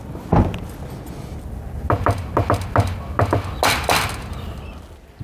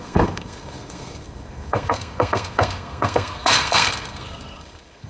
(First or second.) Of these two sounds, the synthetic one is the second